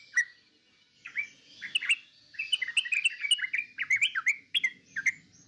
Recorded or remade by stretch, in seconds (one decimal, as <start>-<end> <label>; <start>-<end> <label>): 0.0-5.5 recorded